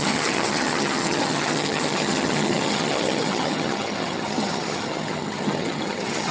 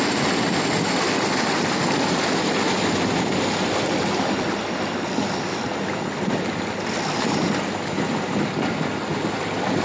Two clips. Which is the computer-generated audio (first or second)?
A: first